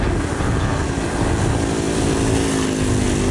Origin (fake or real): real